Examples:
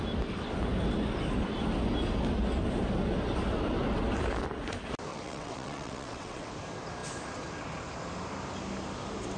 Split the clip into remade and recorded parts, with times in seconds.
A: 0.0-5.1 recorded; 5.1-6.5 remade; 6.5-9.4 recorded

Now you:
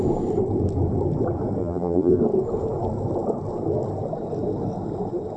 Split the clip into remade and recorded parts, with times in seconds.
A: 0.0-1.6 recorded; 1.6-2.2 remade; 2.2-5.4 recorded

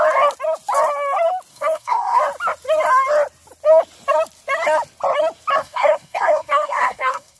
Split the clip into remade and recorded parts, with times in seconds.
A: 0.0-1.5 recorded; 1.5-2.2 remade; 2.2-5.6 recorded; 5.6-7.4 remade

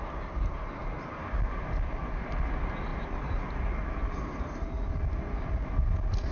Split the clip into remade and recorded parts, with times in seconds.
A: 0.0-6.3 recorded